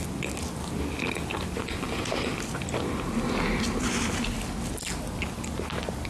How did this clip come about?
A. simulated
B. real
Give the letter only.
B